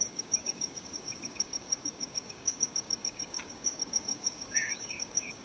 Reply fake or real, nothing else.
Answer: fake